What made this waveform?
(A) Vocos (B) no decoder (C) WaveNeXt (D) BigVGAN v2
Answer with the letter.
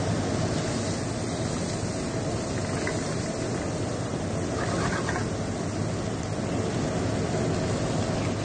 B